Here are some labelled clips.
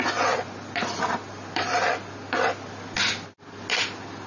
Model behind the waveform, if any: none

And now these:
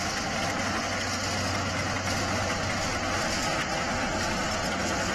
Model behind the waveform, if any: none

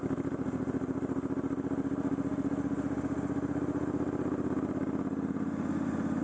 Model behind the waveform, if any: none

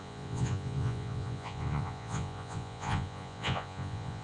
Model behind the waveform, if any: vocoder, Vocos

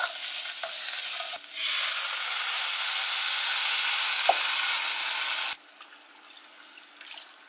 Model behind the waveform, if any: none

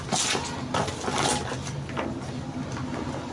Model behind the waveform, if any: none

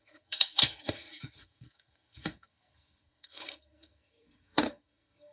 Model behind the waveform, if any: codec, SNAC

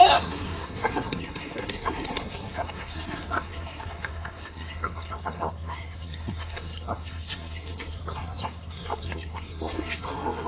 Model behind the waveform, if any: codec, SNAC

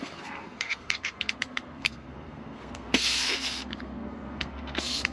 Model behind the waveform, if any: codec, SNAC